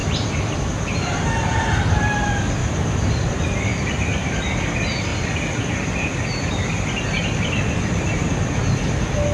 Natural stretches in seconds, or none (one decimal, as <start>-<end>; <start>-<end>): 0.6-2.6; 3.2-3.7; 4.3-5.1; 6.2-9.3